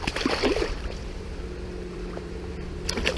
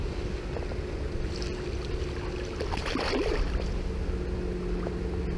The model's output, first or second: first